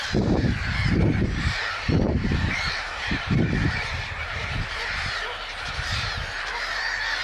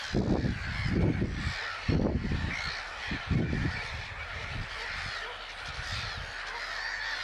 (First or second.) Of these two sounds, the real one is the second